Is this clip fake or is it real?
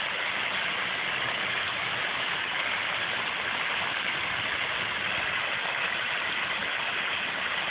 real